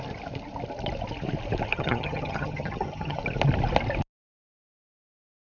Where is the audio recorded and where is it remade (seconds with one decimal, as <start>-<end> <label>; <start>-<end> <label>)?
0.0-1.7 recorded; 1.7-3.2 remade; 3.2-5.5 recorded